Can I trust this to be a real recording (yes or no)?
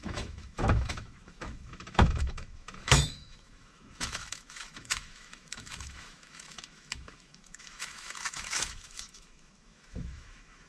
no